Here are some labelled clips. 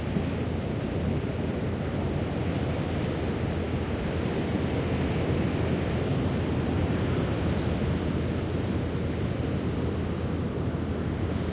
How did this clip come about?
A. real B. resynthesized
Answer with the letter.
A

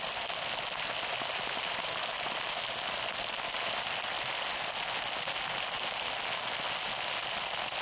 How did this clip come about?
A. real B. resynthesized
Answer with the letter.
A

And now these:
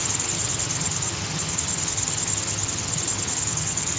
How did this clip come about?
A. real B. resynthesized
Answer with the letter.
B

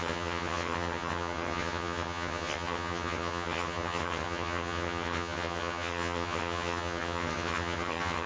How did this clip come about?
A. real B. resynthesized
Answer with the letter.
B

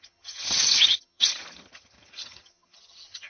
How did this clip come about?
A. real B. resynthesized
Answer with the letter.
B